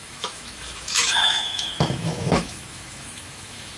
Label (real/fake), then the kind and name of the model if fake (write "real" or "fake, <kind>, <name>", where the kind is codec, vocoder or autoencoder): fake, autoencoder, DAC-VAE